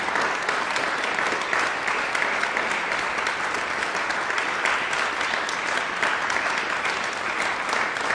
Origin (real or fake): real